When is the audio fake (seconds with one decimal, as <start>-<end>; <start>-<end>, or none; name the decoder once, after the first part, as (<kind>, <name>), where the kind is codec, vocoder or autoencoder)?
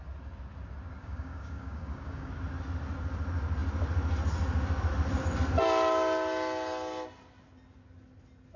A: 1.0-2.3 (codec, DAC)